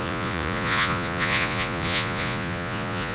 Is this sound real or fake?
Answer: fake